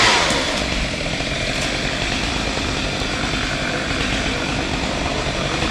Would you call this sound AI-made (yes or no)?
yes